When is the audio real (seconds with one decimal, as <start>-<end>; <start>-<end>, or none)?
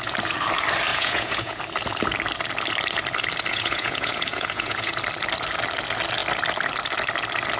0.0-0.9; 1.6-3.5; 4.9-7.6